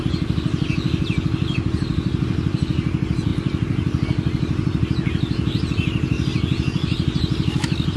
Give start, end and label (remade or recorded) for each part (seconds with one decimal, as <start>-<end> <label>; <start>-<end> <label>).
0.0-8.0 recorded